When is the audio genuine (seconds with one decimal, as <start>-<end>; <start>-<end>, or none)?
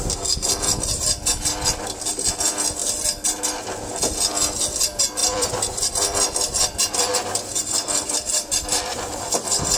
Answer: 0.0-5.2; 7.1-7.5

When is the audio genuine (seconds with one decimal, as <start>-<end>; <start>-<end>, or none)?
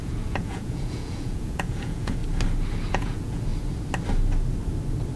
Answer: 2.2-2.9; 3.5-5.2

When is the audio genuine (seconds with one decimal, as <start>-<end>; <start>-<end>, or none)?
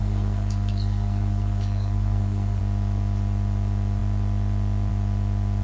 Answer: 2.6-5.6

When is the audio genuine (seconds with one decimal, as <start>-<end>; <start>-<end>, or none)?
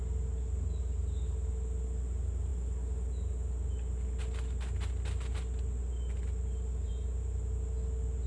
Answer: 0.0-8.3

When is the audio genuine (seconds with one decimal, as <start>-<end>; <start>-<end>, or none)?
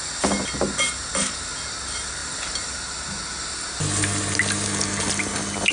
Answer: 0.0-5.7